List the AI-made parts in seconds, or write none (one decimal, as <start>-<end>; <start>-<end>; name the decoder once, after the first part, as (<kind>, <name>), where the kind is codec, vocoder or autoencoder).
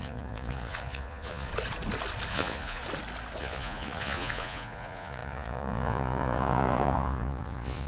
0.0-1.5 (vocoder, Vocos); 2.3-2.8; 3.4-7.9